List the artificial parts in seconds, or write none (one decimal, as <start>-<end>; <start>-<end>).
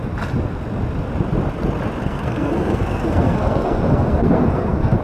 2.0-5.0